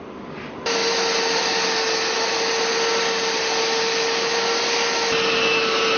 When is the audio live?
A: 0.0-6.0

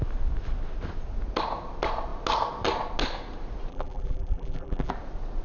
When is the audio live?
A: 0.0-3.7; 4.9-5.4